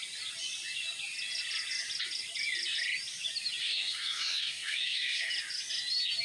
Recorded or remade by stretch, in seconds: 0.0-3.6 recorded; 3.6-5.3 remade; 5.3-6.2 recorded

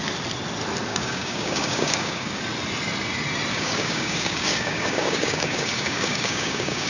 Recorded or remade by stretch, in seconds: 0.0-0.9 recorded; 0.9-2.4 remade; 2.4-3.5 recorded; 3.5-6.9 remade

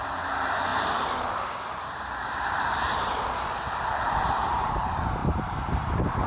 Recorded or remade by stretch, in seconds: 0.0-6.3 remade

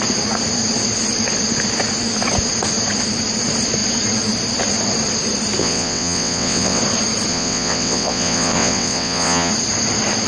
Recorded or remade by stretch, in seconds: 0.0-5.6 recorded; 5.6-6.8 remade; 6.8-7.3 recorded; 7.3-9.5 remade; 9.5-10.3 recorded

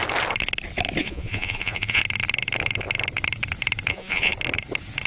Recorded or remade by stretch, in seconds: 0.0-1.0 recorded; 1.0-2.0 remade; 2.0-3.9 recorded; 3.9-4.3 remade; 4.3-5.1 recorded